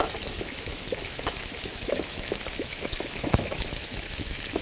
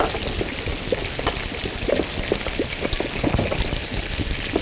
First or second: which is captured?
second